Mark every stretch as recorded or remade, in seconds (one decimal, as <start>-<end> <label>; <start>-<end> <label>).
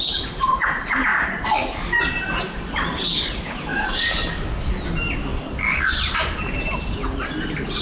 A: 0.0-3.7 recorded; 3.7-4.7 remade; 4.7-5.3 recorded; 5.3-5.9 remade; 5.9-7.8 recorded